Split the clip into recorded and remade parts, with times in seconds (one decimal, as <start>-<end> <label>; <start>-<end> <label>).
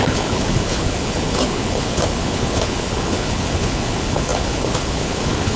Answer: 0.0-5.6 remade